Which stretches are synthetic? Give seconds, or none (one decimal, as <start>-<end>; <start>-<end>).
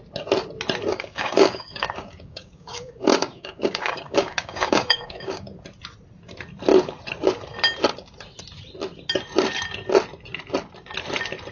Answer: 0.9-5.5